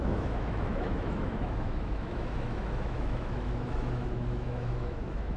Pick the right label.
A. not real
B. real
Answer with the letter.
A